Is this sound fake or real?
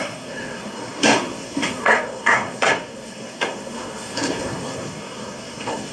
fake